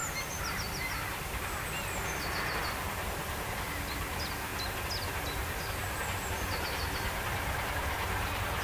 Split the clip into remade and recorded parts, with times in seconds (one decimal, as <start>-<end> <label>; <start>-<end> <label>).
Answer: 0.0-8.6 recorded